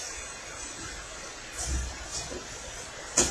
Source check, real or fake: real